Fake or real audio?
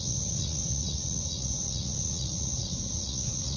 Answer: fake